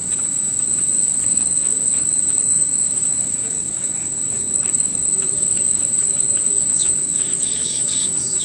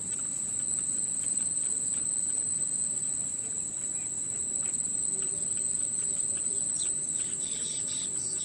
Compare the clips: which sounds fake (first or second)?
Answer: first